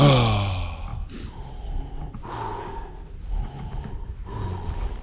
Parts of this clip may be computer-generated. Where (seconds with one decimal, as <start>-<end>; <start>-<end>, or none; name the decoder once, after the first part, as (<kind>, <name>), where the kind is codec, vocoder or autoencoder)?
none